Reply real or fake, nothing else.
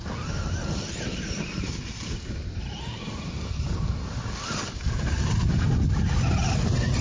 real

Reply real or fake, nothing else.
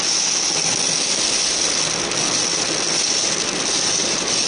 real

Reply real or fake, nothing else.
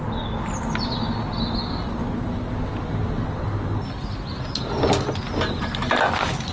real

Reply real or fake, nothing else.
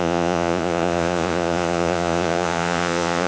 fake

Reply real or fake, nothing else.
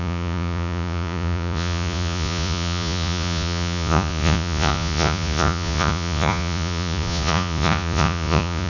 fake